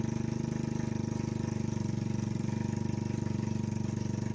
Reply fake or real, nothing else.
real